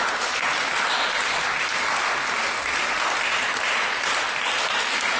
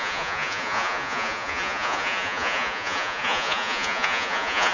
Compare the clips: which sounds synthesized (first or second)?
second